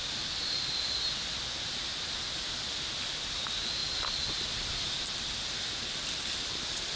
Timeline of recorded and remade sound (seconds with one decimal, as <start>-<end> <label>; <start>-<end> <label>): 0.0-3.8 recorded; 3.8-7.0 remade

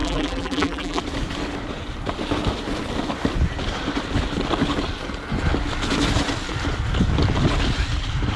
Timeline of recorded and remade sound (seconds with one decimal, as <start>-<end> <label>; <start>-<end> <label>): 0.0-1.0 remade; 1.0-8.4 recorded

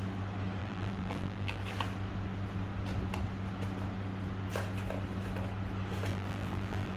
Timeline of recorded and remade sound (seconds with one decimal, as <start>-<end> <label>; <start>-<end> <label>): 0.0-0.6 recorded; 0.6-1.6 remade; 1.6-6.1 recorded; 6.1-7.0 remade

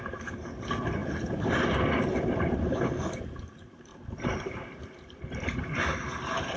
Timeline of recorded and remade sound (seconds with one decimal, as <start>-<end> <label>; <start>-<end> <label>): 0.0-1.0 recorded; 1.0-3.1 remade; 3.1-3.9 recorded; 3.9-5.6 remade; 5.6-6.6 recorded